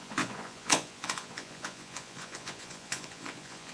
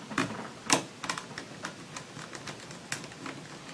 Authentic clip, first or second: second